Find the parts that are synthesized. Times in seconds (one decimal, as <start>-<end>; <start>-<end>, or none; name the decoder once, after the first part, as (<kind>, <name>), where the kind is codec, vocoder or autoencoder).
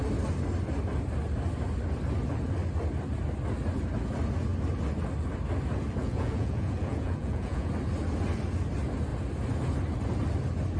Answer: 6.0-7.7 (vocoder, Vocos)